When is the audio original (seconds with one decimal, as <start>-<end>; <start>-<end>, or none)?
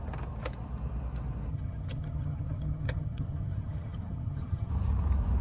0.0-1.5; 4.7-5.4